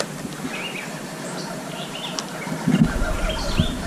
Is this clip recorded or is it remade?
recorded